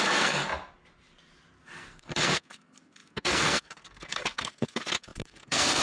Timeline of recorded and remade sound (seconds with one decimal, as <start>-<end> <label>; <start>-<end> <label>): 0.0-0.4 remade; 0.4-1.6 recorded; 1.6-5.8 remade